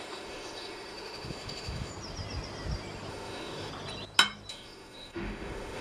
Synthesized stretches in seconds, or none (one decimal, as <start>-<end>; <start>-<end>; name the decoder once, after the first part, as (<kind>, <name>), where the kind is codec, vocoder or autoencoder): 0.0-1.9 (autoencoder, DAC-VAE); 3.1-3.7; 4.5-5.8